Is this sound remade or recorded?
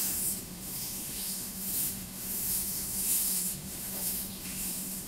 remade